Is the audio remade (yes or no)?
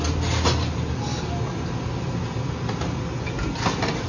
no